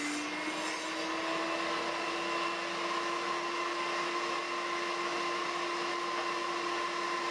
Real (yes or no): yes